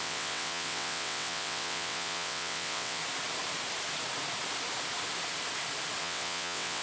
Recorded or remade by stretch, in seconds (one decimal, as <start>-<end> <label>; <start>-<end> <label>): 0.0-3.0 remade; 3.0-6.0 recorded; 6.0-6.8 remade